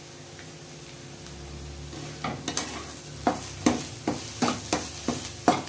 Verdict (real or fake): real